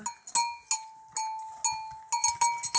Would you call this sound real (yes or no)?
yes